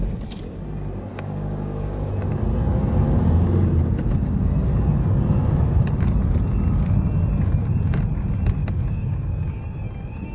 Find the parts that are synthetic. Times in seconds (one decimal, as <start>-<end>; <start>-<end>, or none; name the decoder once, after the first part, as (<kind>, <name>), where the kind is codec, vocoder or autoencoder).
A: 1.1-2.1 (codec, DAC); 8.6-9.6